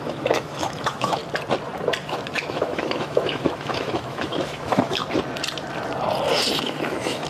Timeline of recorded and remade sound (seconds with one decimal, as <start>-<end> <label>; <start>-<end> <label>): 0.0-1.2 remade; 1.2-2.1 recorded; 2.1-5.0 remade; 5.0-6.6 recorded; 6.6-7.3 remade